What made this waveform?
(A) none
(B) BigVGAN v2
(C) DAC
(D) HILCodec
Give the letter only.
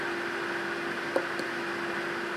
A